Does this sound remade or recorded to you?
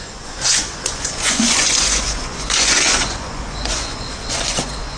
remade